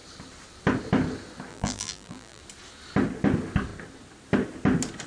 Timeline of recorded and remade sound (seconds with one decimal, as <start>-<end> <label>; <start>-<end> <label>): 0.0-1.5 recorded; 1.5-2.4 remade; 2.4-5.1 recorded